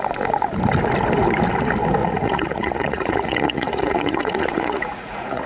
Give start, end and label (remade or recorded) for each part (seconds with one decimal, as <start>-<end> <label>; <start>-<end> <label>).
0.0-2.0 recorded; 2.0-5.5 remade